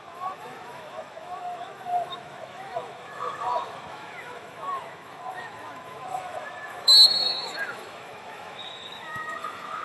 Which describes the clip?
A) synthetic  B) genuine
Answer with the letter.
A